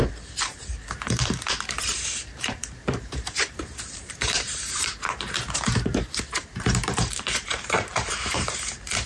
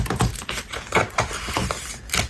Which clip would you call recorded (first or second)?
second